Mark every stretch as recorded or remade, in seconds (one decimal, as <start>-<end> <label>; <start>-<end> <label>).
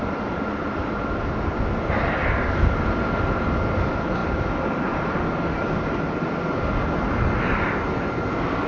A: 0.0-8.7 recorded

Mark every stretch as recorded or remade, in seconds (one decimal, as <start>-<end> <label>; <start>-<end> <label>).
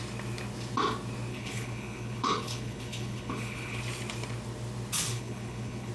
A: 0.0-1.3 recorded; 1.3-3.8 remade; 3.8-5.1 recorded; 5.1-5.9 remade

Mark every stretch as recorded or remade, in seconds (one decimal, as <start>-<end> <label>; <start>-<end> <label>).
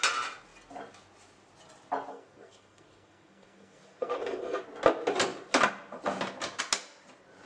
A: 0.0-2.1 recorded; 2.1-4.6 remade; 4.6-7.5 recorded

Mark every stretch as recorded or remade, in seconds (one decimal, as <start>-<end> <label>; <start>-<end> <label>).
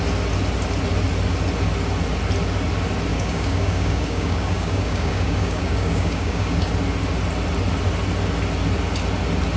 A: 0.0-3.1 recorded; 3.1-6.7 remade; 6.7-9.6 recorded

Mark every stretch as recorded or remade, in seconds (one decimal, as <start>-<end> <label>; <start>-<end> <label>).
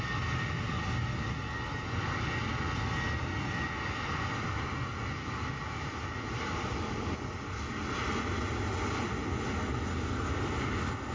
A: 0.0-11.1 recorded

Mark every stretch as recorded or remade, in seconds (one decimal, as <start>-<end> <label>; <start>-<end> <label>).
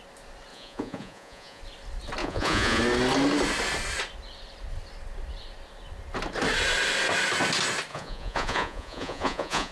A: 0.0-0.5 recorded; 0.5-1.6 remade; 1.6-2.2 recorded; 2.2-2.8 remade; 2.8-7.9 recorded; 7.9-9.7 remade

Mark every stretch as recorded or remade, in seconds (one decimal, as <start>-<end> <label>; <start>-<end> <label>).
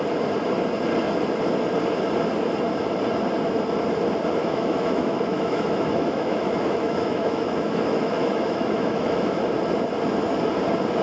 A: 0.0-4.4 recorded; 4.4-9.4 remade; 9.4-11.0 recorded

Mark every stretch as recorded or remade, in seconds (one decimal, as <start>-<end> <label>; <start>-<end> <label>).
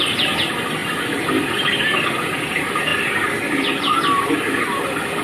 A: 0.0-5.2 recorded